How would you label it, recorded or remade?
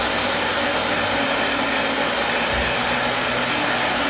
remade